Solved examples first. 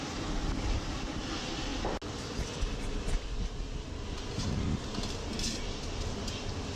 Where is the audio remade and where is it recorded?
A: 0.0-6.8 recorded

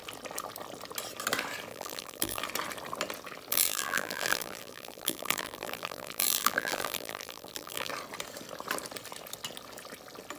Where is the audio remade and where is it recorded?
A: 0.0-1.7 recorded; 1.7-2.4 remade; 2.4-3.5 recorded; 3.5-7.9 remade; 7.9-10.4 recorded

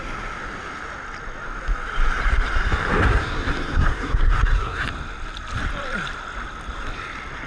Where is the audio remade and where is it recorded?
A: 0.0-3.1 recorded; 3.1-4.8 remade; 4.8-7.5 recorded

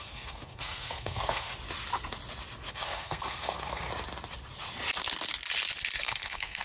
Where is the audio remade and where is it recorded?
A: 0.0-1.5 remade; 1.5-2.7 recorded; 2.7-3.9 remade; 3.9-6.0 recorded; 6.0-6.6 remade

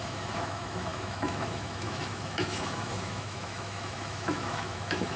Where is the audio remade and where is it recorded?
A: 0.0-5.2 remade

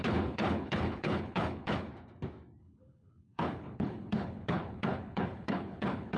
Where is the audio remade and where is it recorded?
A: 0.0-1.9 remade; 1.9-2.6 recorded; 2.6-6.2 remade

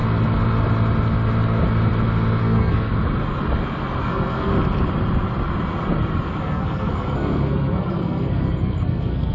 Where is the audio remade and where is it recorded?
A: 0.0-2.4 recorded; 2.4-2.9 remade; 2.9-4.0 recorded; 4.0-4.5 remade; 4.5-6.4 recorded; 6.4-9.3 remade